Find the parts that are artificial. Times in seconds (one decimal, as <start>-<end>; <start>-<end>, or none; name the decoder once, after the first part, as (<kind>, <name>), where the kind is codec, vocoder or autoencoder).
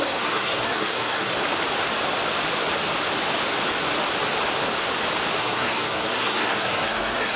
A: 0.0-1.3 (codec, SNAC); 5.4-7.4